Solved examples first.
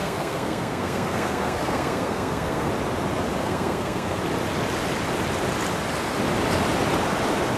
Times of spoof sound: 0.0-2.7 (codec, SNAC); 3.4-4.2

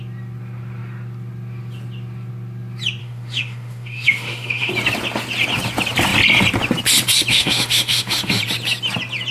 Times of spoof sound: 3.0-4.7 (autoencoder, DAC-VAE); 7.3-8.4

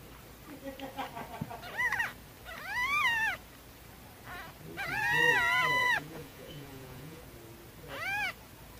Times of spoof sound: 5.8-7.2 (vocoder, Vocos)